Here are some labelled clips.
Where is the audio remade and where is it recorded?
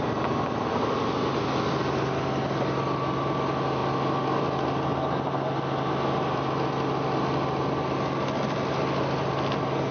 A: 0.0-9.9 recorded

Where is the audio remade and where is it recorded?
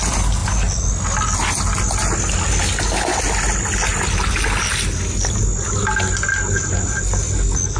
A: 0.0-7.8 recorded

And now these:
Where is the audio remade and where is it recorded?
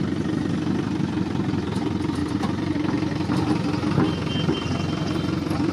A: 0.0-5.7 recorded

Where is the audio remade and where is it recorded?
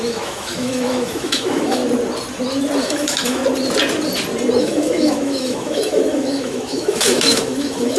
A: 0.0-1.8 remade; 1.8-2.8 recorded; 2.8-3.4 remade; 3.4-4.6 recorded; 4.6-8.0 remade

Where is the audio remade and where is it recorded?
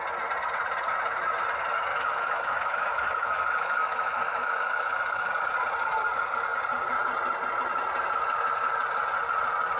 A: 0.0-1.9 recorded; 1.9-5.3 remade; 5.3-9.8 recorded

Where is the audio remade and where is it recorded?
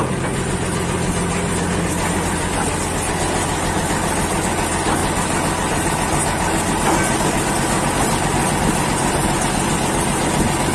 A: 0.0-10.7 recorded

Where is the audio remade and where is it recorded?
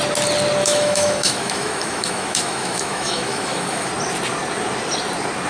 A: 0.0-0.6 recorded; 0.6-3.9 remade; 3.9-5.5 recorded